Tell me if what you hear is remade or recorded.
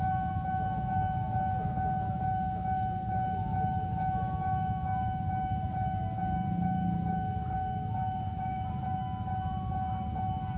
remade